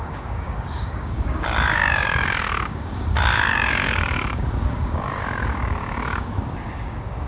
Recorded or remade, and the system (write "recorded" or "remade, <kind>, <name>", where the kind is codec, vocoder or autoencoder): remade, codec, DAC